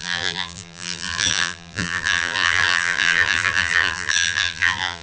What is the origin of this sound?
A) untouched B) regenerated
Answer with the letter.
B